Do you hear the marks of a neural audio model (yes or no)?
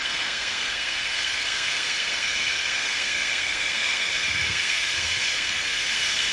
yes